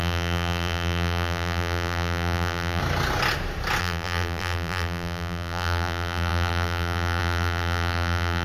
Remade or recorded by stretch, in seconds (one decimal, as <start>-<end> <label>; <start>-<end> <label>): 0.0-2.8 remade; 2.8-3.8 recorded; 3.8-8.4 remade